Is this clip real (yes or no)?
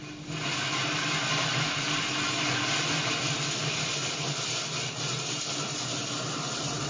yes